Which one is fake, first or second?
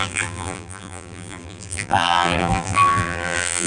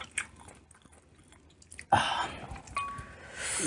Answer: first